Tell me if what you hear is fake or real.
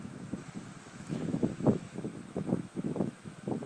fake